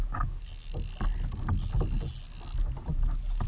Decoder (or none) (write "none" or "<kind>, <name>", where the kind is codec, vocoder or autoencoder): none